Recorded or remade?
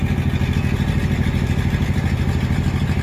recorded